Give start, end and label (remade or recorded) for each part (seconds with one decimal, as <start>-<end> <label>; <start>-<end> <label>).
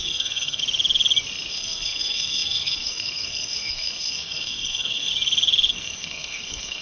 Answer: 0.0-0.6 remade; 0.6-1.5 recorded; 1.5-5.1 remade; 5.1-5.7 recorded; 5.7-6.8 remade